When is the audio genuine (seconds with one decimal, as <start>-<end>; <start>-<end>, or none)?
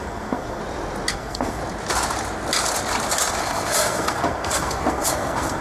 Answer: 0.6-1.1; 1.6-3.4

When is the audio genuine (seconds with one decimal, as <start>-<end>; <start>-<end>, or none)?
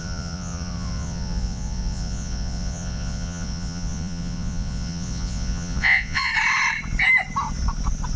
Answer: 6.3-8.2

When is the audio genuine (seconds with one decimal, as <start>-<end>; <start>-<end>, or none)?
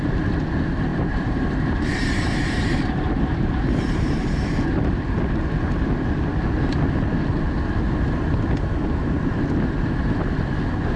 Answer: 0.0-0.9; 4.5-11.0